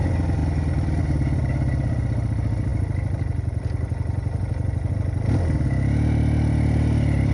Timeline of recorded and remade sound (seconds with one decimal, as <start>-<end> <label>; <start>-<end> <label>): 0.0-7.3 recorded